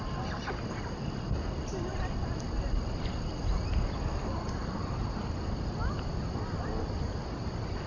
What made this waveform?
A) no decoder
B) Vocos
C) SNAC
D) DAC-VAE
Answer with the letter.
A